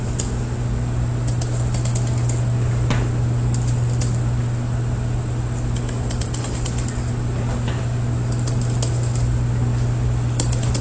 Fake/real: real